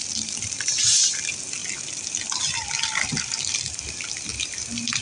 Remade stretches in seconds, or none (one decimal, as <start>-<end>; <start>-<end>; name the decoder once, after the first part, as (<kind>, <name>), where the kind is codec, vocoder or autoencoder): none